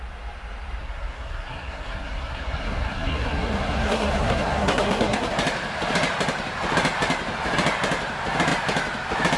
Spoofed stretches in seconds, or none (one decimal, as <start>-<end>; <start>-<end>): 0.8-5.3